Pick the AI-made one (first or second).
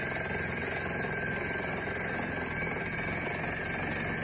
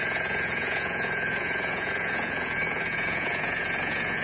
second